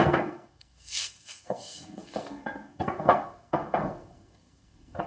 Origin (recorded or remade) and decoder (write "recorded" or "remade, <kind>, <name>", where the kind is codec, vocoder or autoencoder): remade, codec, SNAC